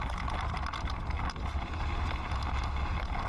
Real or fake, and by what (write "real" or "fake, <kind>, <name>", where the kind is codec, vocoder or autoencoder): real